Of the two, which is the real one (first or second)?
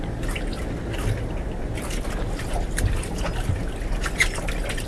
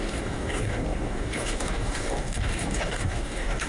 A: first